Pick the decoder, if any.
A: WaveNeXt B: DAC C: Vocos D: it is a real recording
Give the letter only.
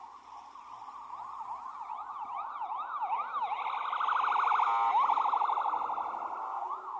D